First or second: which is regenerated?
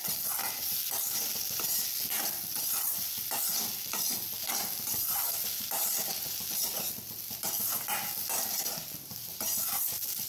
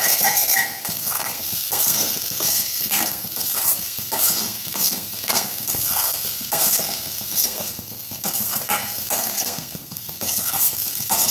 second